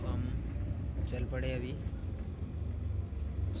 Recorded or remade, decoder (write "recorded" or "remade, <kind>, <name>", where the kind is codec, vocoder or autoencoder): recorded